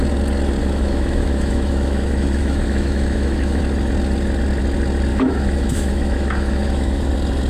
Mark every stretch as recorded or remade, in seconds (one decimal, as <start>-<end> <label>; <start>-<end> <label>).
0.0-0.6 recorded; 0.6-3.6 remade; 3.6-5.1 recorded; 5.1-7.1 remade; 7.1-7.5 recorded